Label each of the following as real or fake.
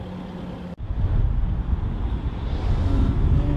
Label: real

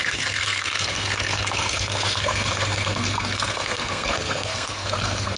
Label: fake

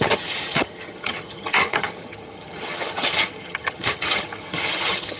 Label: fake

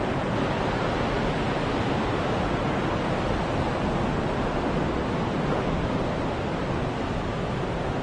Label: real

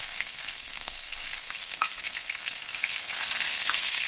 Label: fake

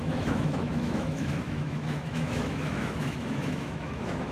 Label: fake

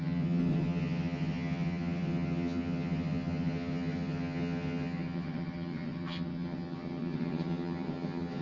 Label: fake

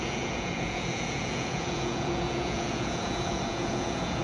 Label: fake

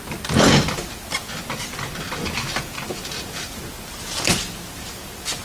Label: real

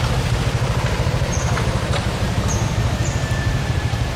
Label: fake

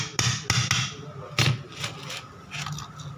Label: real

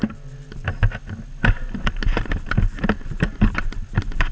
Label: real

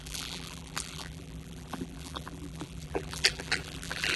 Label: fake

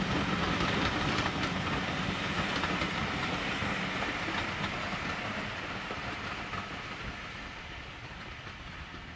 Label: real